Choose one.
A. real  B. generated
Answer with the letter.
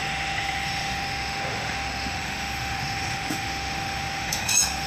B